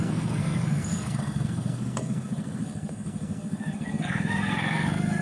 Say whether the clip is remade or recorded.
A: remade